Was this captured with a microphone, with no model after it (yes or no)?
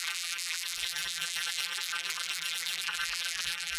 no